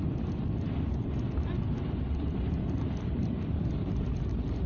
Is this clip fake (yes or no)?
no